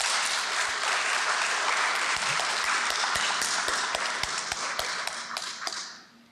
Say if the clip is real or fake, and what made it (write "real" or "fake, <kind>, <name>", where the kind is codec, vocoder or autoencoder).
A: fake, vocoder, BigVGAN v2